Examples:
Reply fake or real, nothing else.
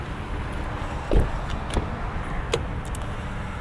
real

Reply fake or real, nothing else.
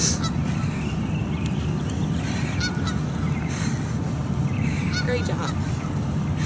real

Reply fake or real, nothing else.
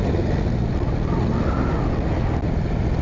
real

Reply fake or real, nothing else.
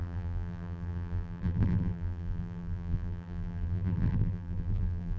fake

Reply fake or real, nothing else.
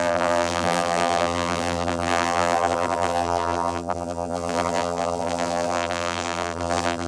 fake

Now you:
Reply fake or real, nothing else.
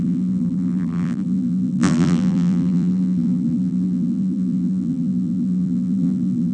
fake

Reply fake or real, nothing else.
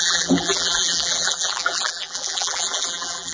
fake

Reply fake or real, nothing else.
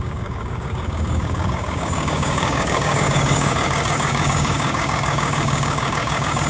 fake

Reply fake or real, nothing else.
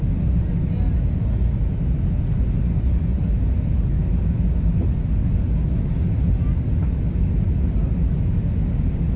real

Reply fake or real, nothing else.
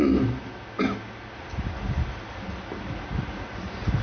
real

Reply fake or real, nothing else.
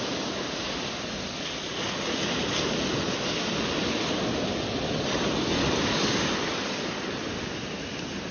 real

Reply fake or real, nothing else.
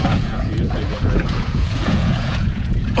fake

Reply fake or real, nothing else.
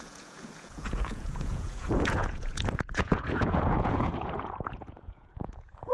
fake